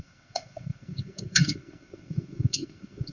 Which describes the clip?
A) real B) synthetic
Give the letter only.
B